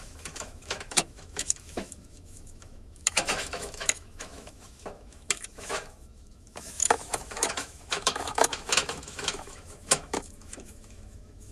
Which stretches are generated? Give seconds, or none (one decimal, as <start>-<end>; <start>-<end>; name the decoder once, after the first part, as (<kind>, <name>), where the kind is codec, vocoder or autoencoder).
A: 0.0-11.5 (autoencoder, DAC-VAE)